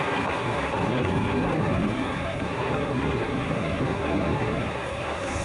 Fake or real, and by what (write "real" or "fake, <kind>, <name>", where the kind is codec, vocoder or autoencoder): fake, codec, SNAC